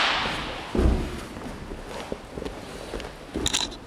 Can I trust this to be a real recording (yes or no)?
yes